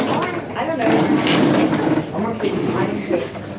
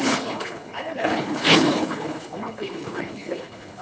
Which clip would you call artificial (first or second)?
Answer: second